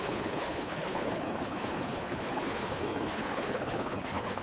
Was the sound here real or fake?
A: fake